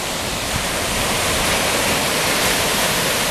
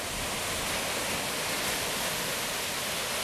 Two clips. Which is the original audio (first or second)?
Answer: second